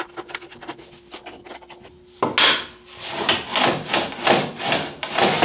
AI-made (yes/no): no